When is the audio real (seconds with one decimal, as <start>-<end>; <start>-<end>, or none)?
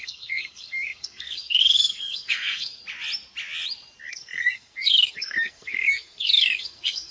2.8-4.1